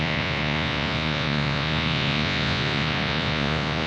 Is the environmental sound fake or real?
fake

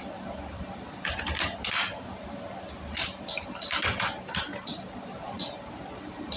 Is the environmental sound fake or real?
real